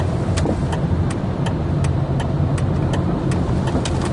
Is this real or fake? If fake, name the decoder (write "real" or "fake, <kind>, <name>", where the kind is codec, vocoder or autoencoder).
real